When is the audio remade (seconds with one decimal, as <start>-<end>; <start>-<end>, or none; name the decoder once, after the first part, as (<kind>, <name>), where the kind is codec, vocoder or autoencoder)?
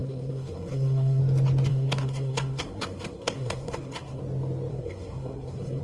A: 0.0-1.2 (codec, SNAC); 1.7-4.2; 4.7-5.8